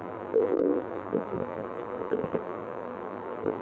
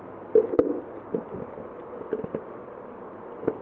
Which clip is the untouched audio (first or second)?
second